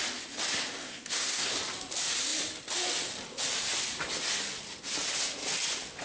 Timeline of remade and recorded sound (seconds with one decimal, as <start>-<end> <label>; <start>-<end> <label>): 0.0-0.8 recorded; 0.8-1.5 remade; 1.5-6.0 recorded